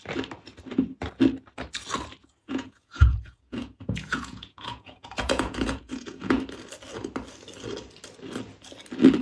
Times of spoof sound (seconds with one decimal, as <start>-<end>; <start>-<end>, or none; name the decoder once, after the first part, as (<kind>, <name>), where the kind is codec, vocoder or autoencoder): 2.2-6.4 (vocoder, Vocos)

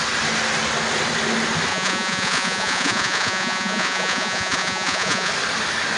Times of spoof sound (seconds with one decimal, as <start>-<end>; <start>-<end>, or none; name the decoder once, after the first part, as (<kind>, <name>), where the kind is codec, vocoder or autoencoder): 1.7-5.3 (vocoder, Vocos)

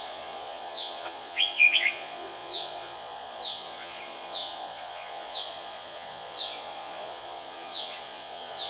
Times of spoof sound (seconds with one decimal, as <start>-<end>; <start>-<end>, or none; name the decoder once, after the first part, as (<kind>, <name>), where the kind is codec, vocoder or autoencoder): 0.0-8.7 (vocoder, Vocos)